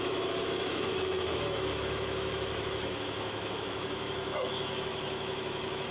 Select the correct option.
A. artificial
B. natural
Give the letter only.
A